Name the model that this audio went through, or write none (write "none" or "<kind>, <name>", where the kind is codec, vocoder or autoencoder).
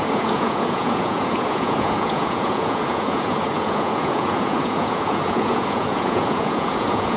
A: vocoder, Vocos